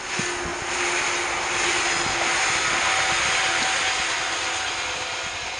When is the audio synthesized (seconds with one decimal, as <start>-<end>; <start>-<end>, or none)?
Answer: none